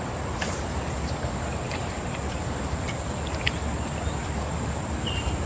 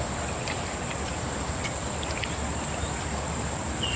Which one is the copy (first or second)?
second